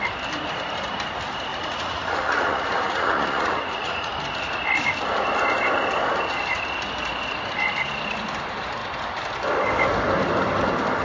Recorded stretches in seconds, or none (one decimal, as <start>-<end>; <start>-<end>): 0.0-1.5; 4.1-11.0